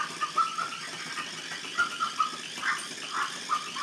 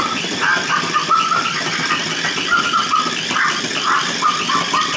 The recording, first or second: first